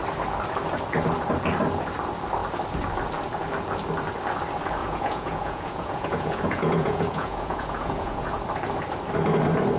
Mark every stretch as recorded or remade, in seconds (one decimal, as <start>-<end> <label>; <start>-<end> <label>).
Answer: 0.0-4.8 recorded; 4.8-8.4 remade; 8.4-9.8 recorded